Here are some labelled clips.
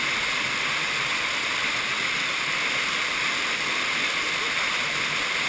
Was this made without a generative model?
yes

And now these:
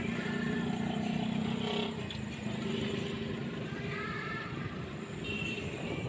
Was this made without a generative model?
no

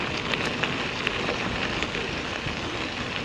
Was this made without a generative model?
yes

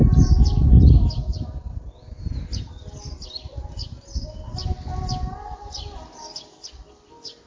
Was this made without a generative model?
yes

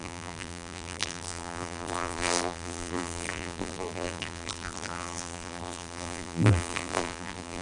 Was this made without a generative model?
no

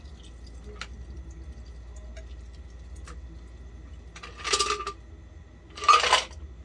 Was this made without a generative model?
yes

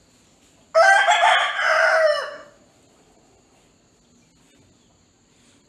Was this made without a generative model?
yes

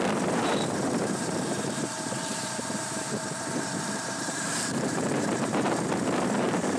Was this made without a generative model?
no